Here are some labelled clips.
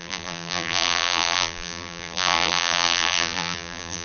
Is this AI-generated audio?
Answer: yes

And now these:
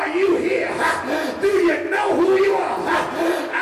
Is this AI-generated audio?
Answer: no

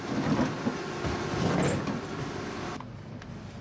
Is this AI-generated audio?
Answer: no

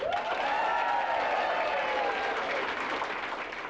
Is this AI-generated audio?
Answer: no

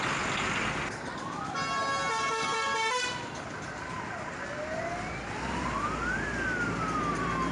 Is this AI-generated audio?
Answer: no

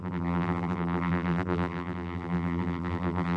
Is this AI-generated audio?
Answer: yes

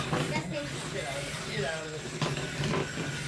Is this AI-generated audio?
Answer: no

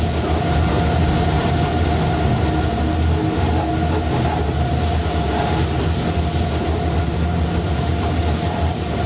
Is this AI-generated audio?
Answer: no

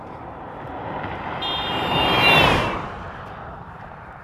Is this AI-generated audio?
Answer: yes